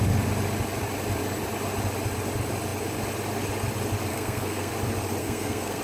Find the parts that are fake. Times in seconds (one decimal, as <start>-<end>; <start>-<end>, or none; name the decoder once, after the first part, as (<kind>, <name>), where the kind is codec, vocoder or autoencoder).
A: 4.1-4.7 (codec, SNAC); 5.2-5.8

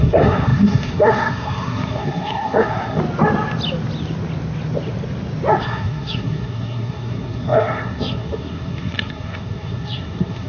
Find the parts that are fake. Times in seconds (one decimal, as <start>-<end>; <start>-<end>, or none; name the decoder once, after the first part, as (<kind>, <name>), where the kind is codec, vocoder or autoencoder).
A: 0.0-3.0 (codec, SNAC); 5.6-10.5

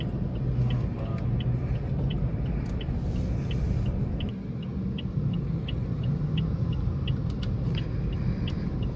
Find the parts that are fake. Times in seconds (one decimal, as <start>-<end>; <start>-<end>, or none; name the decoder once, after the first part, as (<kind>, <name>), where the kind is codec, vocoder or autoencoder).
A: none

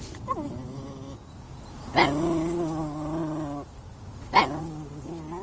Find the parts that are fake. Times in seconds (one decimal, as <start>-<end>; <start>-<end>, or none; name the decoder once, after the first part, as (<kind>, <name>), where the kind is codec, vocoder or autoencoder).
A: none

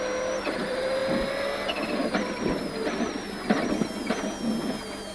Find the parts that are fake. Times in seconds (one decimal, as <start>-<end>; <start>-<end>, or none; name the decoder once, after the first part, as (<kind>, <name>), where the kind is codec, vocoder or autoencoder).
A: none

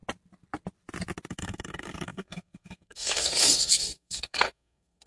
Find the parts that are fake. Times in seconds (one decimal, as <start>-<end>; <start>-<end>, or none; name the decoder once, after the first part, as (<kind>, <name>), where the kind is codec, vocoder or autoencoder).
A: 1.3-5.1 (codec, SNAC)